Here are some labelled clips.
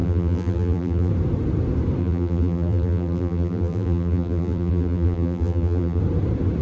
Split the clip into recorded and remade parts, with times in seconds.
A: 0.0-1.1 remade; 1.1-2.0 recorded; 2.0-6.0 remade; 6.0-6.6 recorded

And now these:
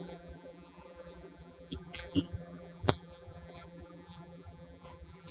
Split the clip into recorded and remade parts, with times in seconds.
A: 0.0-5.3 remade

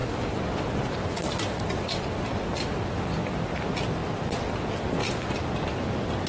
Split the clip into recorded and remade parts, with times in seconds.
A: 0.0-3.3 remade; 3.3-5.0 recorded; 5.0-5.8 remade; 5.8-6.3 recorded

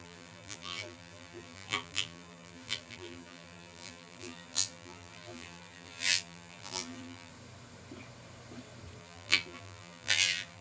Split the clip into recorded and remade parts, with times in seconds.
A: 0.0-7.3 remade; 7.3-9.0 recorded; 9.0-10.6 remade